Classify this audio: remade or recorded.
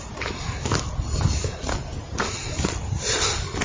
recorded